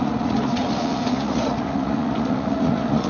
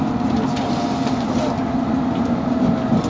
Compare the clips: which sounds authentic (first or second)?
second